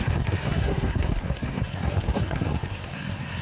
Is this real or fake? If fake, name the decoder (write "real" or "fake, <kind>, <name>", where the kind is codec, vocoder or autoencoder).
fake, codec, SNAC